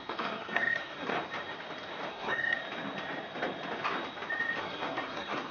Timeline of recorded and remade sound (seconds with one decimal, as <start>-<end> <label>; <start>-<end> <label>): 0.0-1.1 remade; 1.1-2.1 recorded; 2.1-2.6 remade; 2.6-4.6 recorded; 4.6-5.5 remade